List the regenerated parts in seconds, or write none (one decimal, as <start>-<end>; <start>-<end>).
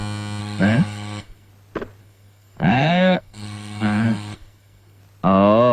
0.4-1.5; 2.0-5.0